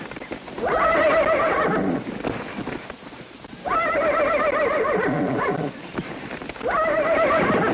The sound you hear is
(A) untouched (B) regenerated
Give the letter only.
A